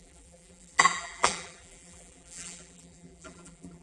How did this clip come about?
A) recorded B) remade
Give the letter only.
B